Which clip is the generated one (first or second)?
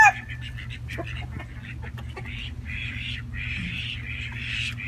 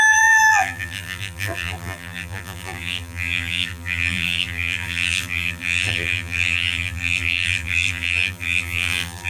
second